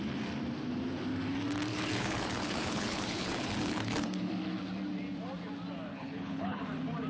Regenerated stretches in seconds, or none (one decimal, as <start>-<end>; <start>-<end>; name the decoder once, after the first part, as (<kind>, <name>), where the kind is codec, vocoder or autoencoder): 1.7-4.3 (codec, HILCodec); 5.9-6.6